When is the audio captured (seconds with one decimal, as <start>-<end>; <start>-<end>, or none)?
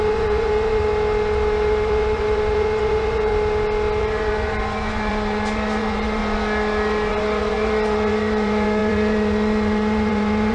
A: 0.9-1.7; 3.3-4.0; 6.2-7.1